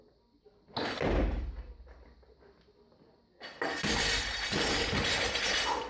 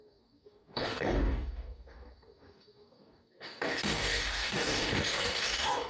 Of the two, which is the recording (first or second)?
first